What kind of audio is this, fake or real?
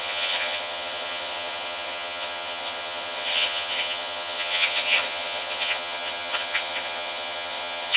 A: fake